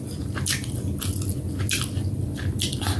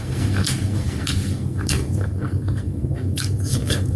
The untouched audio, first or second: first